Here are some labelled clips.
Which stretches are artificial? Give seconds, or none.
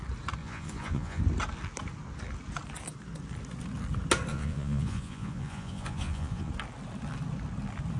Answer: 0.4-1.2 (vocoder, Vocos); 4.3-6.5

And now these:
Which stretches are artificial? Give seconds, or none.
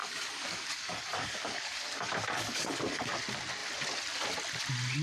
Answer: 0.0-3.0 (codec, DAC)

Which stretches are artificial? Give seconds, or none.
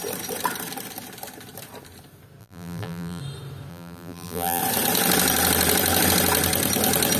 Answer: 2.4-3.2 (vocoder, BigVGAN v2); 3.7-4.6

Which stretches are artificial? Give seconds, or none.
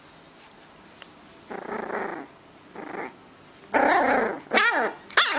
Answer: none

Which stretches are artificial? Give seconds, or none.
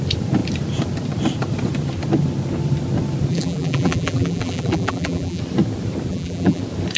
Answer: 3.3-5.4 (vocoder, BigVGAN v2); 6.1-6.6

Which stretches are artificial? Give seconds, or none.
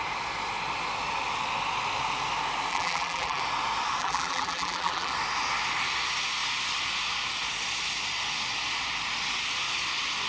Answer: 2.7-3.4 (vocoder, BigVGAN v2); 4.0-5.1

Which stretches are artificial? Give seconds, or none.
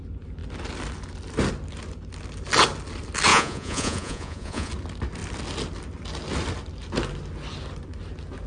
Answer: 3.3-4.7 (vocoder, Vocos)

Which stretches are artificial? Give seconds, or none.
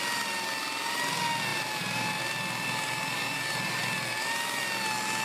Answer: 1.5-2.2 (vocoder, BigVGAN v2)